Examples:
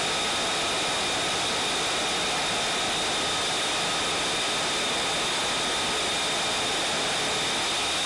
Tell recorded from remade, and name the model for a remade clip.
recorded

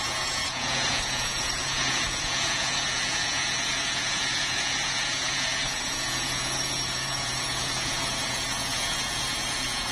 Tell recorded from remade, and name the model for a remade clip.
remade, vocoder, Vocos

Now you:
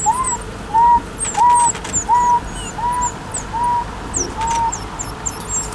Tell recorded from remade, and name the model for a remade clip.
recorded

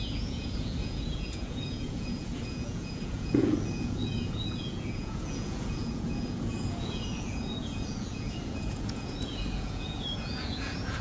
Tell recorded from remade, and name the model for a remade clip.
remade, vocoder, Vocos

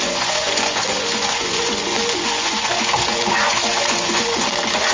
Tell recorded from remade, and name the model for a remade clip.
remade, vocoder, Vocos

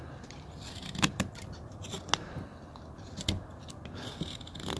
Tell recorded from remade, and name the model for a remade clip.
recorded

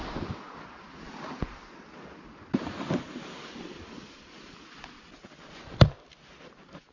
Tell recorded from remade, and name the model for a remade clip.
recorded